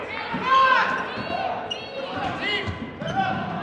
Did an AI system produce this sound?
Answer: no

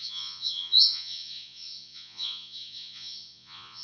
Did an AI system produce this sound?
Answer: yes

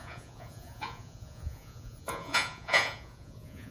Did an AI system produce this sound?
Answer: yes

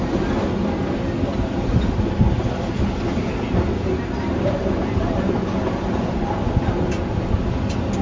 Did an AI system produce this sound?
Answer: no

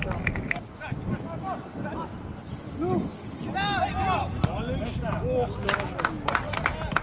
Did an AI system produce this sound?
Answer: no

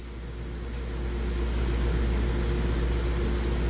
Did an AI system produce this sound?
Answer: no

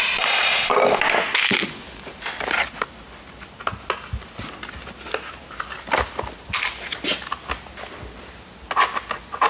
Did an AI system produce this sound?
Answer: no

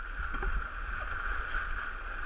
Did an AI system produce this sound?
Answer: no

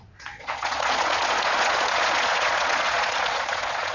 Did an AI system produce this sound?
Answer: yes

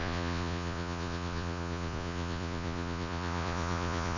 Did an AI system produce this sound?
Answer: yes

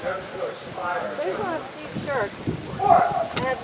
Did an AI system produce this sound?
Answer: no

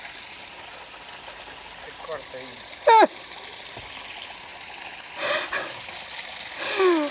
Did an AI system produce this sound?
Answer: no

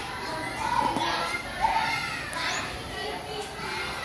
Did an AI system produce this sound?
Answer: no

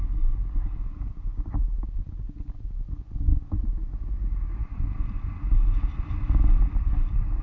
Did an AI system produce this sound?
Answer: no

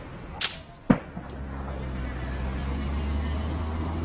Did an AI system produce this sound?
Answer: no